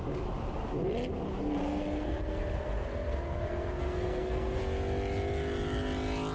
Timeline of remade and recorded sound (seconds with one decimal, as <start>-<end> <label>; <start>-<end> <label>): 0.0-1.6 recorded; 1.6-4.6 remade; 4.6-6.3 recorded